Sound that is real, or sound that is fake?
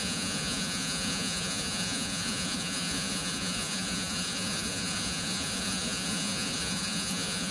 fake